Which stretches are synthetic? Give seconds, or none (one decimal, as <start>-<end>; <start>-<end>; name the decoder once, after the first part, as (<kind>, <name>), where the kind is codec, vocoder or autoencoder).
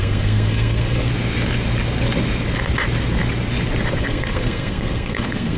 0.0-1.1 (codec, SNAC); 4.0-5.6